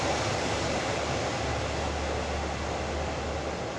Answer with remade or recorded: recorded